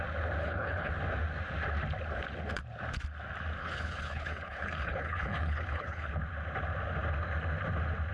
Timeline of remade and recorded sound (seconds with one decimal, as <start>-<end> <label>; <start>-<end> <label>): 0.0-0.4 recorded; 0.4-0.9 remade; 0.9-3.6 recorded; 3.6-6.1 remade; 6.1-8.1 recorded